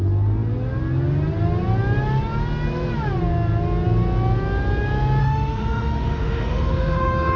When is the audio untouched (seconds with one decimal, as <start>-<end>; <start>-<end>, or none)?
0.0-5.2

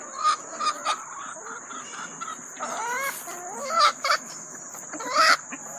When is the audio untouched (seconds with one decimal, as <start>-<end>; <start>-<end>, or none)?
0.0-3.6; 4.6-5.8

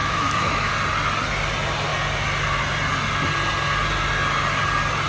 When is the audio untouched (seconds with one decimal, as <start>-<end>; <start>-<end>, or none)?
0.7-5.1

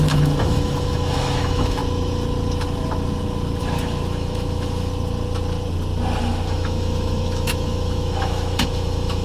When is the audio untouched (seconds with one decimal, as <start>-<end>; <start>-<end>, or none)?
1.8-3.6; 4.9-6.2